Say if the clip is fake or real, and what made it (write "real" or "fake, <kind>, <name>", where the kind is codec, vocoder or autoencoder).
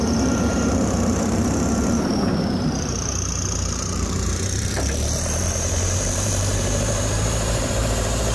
fake, vocoder, BigVGAN v2